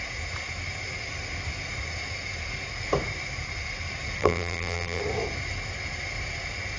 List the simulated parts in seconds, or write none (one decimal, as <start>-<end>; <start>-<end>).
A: 4.2-5.0